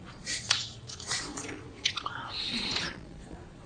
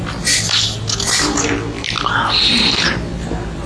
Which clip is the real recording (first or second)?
second